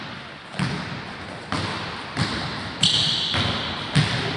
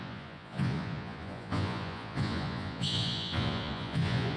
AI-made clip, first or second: second